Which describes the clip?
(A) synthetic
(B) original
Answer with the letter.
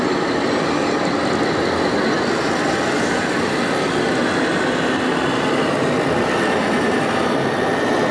B